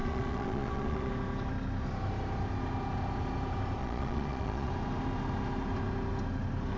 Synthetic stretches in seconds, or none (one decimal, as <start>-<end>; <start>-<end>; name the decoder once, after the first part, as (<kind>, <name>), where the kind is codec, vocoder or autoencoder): 0.0-1.1 (vocoder, Vocos); 3.8-4.7